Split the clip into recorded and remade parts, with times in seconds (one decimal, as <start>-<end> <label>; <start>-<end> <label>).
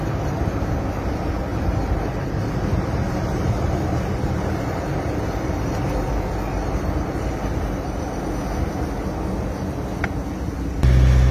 0.0-1.5 recorded; 1.5-5.6 remade; 5.6-11.3 recorded